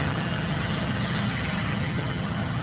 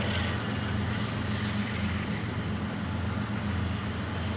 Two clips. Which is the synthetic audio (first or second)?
first